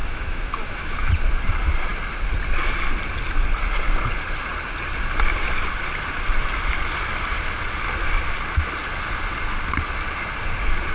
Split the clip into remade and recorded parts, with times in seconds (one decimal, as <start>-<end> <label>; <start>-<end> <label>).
0.0-1.1 remade; 1.1-10.9 recorded